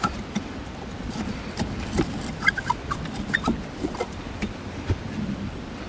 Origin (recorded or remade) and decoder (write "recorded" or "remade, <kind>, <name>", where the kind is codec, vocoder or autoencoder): recorded